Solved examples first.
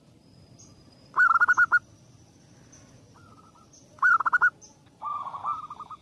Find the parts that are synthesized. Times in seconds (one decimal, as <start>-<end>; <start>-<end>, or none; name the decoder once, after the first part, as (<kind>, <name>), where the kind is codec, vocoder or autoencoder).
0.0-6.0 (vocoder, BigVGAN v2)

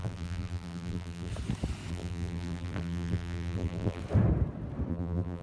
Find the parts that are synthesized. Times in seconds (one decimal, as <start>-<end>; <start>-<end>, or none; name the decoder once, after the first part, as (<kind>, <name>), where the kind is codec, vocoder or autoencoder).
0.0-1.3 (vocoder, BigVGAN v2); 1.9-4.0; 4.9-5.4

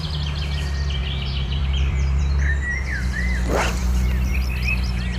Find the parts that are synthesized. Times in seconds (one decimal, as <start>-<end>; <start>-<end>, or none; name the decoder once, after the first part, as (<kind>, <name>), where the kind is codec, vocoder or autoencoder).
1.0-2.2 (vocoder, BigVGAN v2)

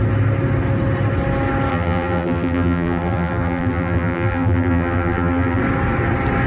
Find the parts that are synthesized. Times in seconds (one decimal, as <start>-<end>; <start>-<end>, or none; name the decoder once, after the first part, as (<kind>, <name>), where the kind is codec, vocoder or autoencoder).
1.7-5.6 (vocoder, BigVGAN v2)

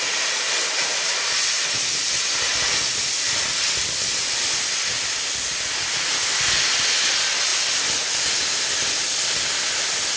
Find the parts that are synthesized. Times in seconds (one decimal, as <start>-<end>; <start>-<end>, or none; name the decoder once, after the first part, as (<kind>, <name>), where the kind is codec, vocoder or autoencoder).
none